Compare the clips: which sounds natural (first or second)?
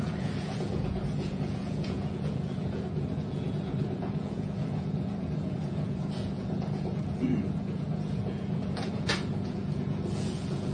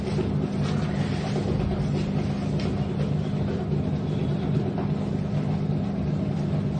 second